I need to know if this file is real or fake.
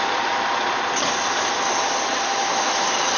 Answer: real